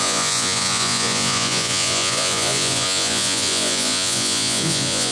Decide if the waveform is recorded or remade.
remade